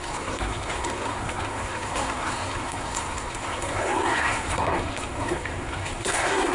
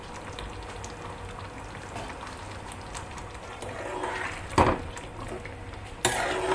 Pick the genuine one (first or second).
second